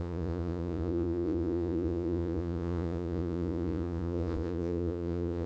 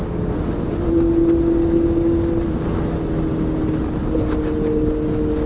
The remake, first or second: first